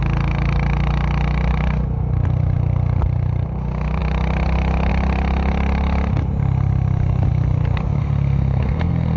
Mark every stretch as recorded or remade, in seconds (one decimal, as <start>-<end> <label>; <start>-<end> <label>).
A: 0.0-8.0 recorded; 8.0-9.2 remade